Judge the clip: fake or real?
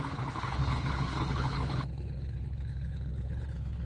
fake